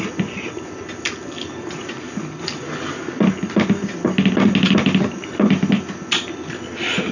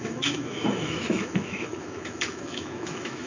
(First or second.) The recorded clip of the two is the first